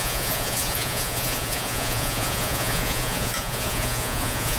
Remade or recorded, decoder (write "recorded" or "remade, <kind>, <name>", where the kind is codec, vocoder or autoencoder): remade, vocoder, Vocos